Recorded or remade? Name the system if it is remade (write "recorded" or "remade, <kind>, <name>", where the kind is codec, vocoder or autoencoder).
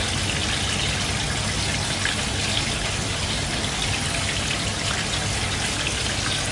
recorded